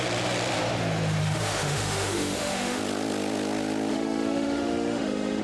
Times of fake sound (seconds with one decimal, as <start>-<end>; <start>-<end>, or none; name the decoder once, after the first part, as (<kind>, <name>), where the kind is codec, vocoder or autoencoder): 1.2-2.8 (autoencoder, DAC-VAE); 3.9-5.4